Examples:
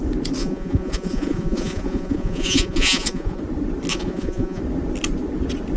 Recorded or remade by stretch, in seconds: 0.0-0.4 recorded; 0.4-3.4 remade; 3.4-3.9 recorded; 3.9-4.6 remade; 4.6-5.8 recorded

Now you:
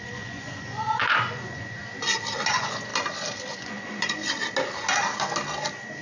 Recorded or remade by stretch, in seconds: 0.0-1.8 remade; 1.8-2.5 recorded; 2.5-2.9 remade; 2.9-3.5 recorded; 3.5-4.2 remade; 4.2-6.0 recorded

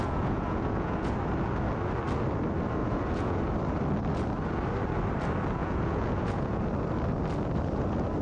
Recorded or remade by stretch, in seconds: 0.0-1.1 remade; 1.1-2.8 recorded; 2.8-3.4 remade; 3.4-5.6 recorded; 5.6-6.6 remade; 6.6-8.2 recorded

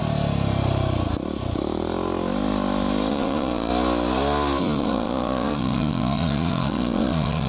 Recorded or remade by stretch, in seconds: 0.0-3.1 recorded; 3.1-3.7 remade; 3.7-4.6 recorded; 4.6-7.5 remade

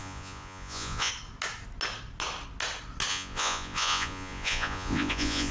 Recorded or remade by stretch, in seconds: 0.0-1.1 remade; 1.1-3.1 recorded; 3.1-5.5 remade

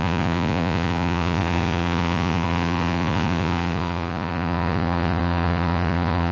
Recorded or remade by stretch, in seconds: 0.0-6.3 remade

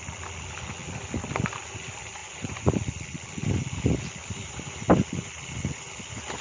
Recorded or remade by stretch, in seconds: 0.0-2.2 recorded; 2.2-2.7 remade; 2.7-6.4 recorded

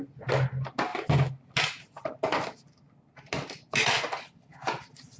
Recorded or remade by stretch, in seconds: 0.0-5.2 recorded